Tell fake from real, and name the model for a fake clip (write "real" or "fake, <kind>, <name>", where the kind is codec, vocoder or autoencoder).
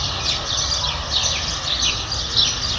real